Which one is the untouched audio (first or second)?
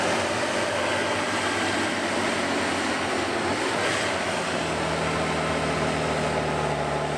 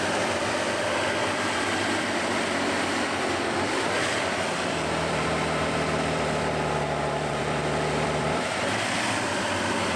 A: first